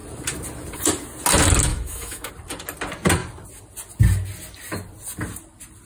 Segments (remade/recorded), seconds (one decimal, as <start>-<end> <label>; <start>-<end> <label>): 0.0-1.7 recorded; 1.7-2.3 remade; 2.3-5.9 recorded